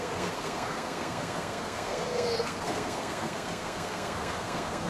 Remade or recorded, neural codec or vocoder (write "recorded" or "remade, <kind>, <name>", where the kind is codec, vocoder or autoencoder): remade, codec, SNAC